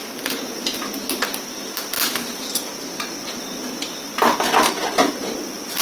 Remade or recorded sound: recorded